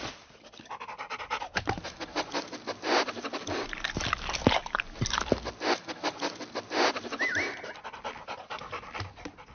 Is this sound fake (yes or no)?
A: no